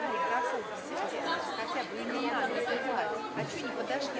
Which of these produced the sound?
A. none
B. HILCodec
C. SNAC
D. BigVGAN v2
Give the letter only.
A